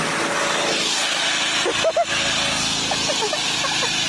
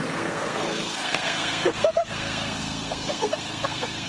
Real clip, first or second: first